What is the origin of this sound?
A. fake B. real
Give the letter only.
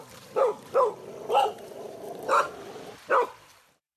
A